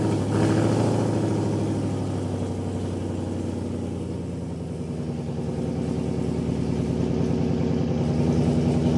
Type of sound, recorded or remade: recorded